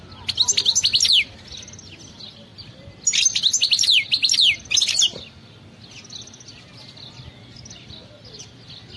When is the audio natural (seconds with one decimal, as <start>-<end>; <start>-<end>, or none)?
0.0-9.0

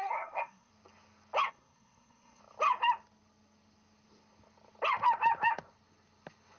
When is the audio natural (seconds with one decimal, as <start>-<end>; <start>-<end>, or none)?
0.7-1.5; 2.4-6.6

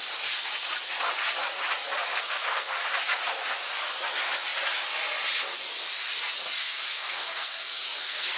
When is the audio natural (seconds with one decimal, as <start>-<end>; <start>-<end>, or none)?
0.0-2.1; 2.8-6.6

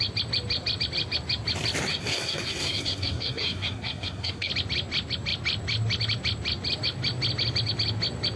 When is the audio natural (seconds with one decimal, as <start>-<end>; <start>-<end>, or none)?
0.0-1.9; 4.5-8.4

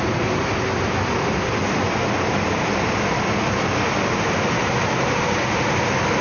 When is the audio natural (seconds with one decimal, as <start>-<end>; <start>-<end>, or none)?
0.0-6.2